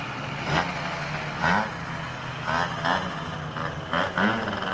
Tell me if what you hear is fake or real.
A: real